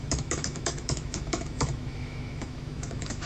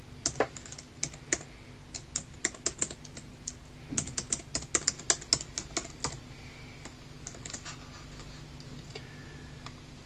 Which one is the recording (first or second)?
second